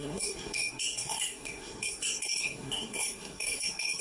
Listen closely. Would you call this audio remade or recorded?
remade